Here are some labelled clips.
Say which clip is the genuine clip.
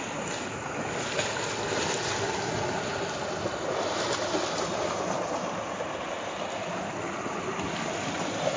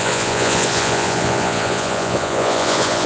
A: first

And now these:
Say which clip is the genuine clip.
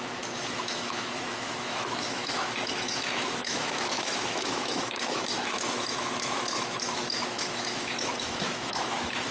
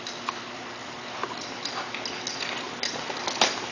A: second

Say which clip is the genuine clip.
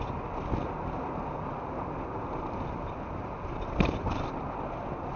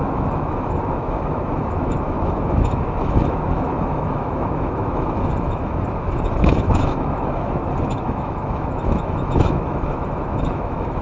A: first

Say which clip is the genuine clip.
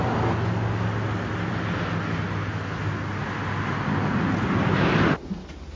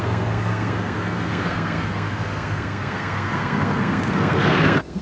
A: first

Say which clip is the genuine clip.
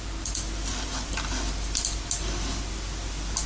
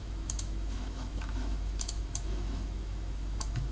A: first